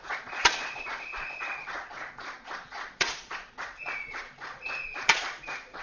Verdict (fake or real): fake